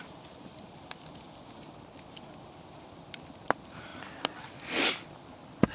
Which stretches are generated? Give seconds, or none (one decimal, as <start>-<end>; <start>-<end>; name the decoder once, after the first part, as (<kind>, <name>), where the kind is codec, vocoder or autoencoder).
none